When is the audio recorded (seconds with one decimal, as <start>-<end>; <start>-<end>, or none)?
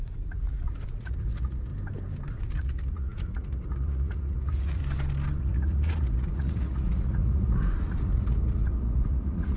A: 1.7-2.3; 4.8-5.4